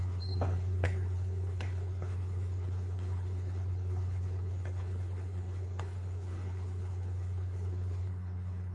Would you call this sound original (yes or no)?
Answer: no